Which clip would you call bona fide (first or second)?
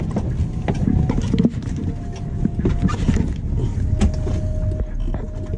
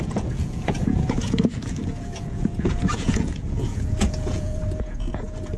first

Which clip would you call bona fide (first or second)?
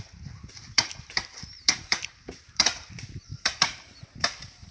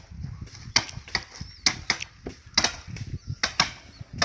second